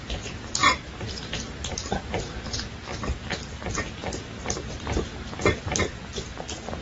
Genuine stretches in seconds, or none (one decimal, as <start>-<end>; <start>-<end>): none